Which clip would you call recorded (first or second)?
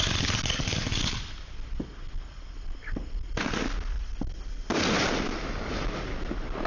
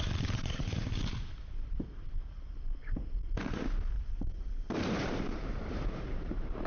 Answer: first